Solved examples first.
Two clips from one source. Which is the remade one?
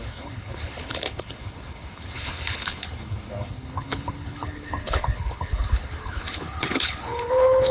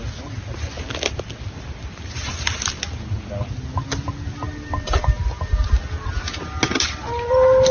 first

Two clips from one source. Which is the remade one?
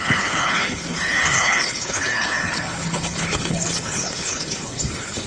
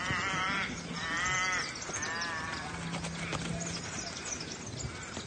first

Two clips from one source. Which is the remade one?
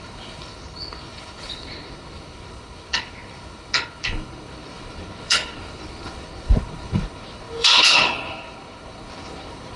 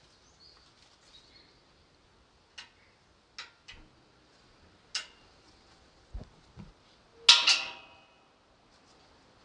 first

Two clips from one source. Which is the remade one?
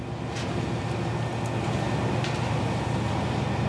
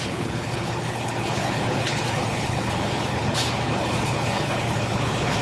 second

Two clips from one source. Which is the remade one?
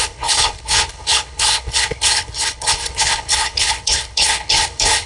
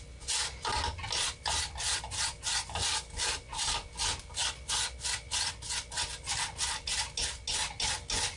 first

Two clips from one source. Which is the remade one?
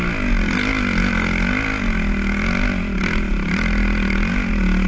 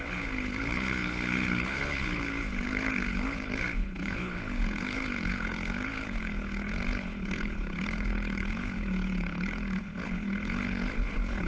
second